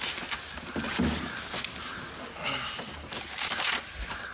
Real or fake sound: real